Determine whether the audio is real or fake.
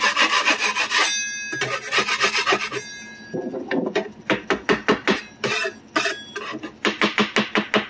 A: real